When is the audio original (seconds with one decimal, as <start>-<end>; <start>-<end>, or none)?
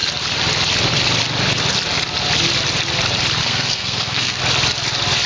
0.0-3.4; 4.4-5.3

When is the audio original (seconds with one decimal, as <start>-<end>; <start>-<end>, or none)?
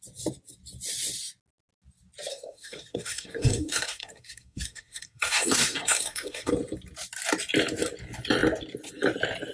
0.0-2.3; 6.5-9.5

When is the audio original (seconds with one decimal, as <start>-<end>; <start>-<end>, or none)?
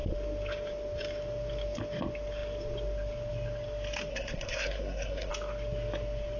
0.0-4.1; 5.3-6.4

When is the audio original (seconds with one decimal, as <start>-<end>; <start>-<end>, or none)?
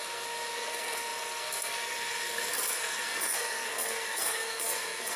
none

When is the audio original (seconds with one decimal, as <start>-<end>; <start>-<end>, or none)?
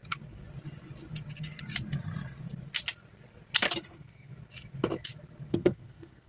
0.0-3.8; 4.3-5.5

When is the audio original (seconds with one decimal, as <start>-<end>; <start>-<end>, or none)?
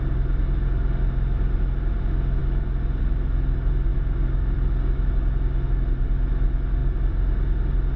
0.0-8.0